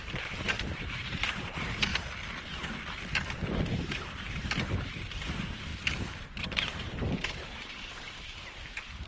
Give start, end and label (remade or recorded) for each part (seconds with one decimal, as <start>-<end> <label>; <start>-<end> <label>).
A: 0.0-1.9 remade; 1.9-3.7 recorded; 3.7-9.1 remade